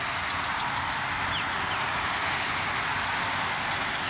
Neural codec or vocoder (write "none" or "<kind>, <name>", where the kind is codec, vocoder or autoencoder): none